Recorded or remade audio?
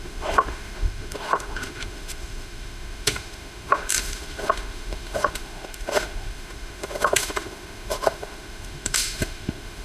remade